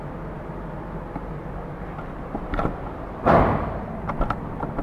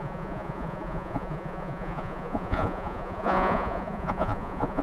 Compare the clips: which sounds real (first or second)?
first